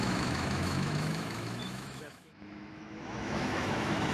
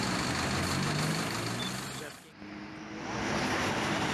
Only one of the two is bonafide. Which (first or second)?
second